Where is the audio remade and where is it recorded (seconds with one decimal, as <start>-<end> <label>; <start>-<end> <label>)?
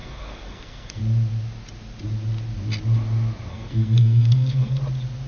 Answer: 0.0-1.0 remade; 1.0-3.5 recorded; 3.5-4.8 remade; 4.8-5.3 recorded